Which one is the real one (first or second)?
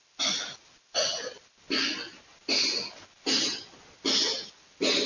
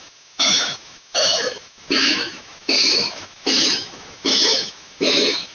first